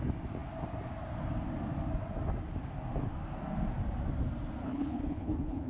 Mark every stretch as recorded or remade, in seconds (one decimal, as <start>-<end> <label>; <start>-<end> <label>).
0.0-4.6 recorded; 4.6-5.7 remade